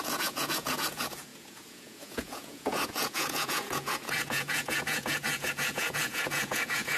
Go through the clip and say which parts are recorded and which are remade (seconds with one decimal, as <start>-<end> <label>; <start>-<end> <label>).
0.0-7.0 remade